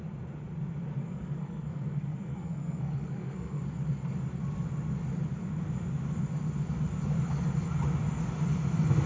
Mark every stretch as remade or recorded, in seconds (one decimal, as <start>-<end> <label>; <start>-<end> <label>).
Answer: 0.0-1.0 recorded; 1.0-3.6 remade; 3.6-9.1 recorded